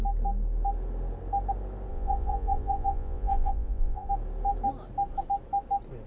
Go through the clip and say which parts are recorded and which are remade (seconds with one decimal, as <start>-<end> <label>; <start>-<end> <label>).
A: 0.0-1.9 recorded; 1.9-4.1 remade; 4.1-6.1 recorded